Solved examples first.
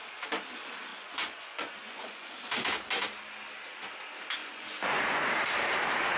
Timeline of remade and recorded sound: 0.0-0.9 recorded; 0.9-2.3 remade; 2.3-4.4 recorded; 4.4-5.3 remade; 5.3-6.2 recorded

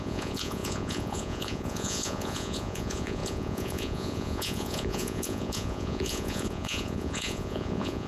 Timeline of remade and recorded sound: 0.0-8.1 remade

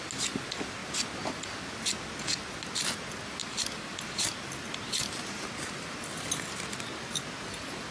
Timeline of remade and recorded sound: 0.0-7.9 recorded

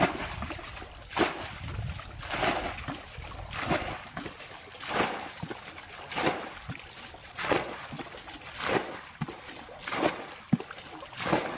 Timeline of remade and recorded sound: 0.0-7.2 recorded; 7.2-7.9 remade; 7.9-11.6 recorded